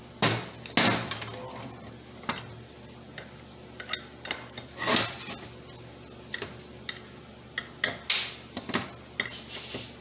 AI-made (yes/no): no